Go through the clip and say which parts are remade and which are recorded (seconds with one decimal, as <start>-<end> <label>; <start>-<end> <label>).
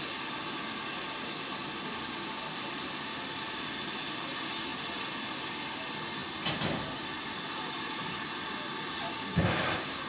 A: 0.0-9.1 recorded; 9.1-10.1 remade